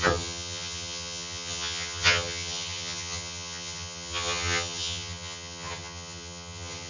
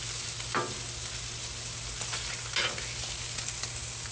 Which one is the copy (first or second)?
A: first